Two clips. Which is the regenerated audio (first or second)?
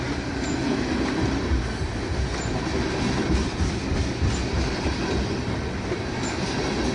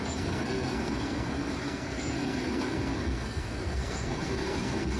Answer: second